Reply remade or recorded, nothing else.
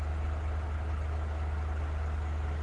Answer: recorded